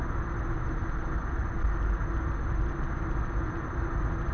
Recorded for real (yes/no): yes